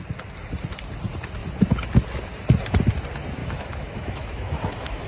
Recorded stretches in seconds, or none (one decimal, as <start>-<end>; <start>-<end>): 0.0-3.4